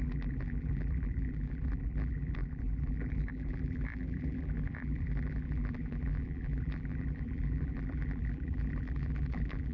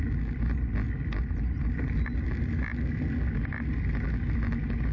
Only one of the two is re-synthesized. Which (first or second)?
first